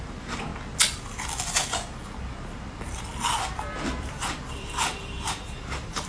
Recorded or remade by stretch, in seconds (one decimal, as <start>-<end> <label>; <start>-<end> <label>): 0.0-0.5 remade; 0.5-4.0 recorded; 4.0-6.1 remade